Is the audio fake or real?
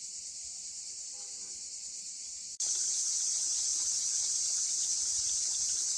fake